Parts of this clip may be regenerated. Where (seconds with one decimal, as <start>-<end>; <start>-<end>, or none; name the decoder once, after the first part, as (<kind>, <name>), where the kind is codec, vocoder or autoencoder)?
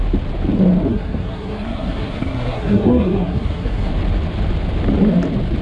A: 0.9-3.9 (codec, SNAC)